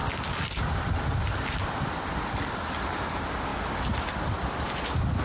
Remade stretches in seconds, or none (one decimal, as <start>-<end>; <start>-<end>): none